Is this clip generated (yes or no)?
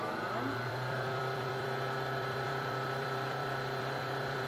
yes